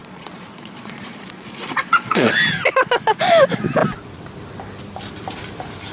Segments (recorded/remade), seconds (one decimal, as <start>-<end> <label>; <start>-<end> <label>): 0.0-2.3 remade; 2.3-5.9 recorded